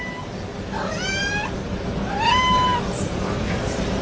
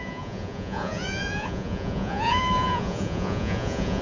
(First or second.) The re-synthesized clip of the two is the second